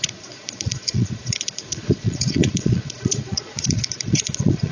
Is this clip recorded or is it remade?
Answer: remade